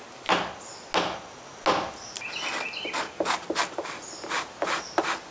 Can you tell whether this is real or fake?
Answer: real